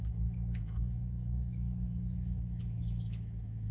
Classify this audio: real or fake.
fake